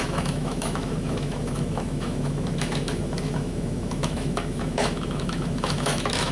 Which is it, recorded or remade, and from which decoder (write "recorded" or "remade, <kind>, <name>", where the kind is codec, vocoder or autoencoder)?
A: remade, autoencoder, DAC-VAE